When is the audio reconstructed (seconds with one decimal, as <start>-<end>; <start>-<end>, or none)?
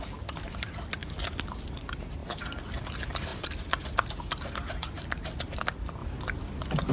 0.0-1.0; 1.8-2.2; 2.8-3.3; 5.5-6.0